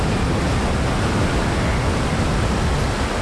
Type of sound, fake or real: real